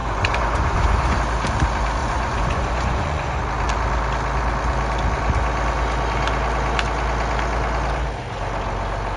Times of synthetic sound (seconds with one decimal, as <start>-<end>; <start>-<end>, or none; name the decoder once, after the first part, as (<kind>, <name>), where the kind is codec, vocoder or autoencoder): 0.0-1.2 (vocoder, Vocos); 2.0-3.4